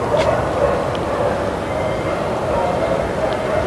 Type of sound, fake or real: real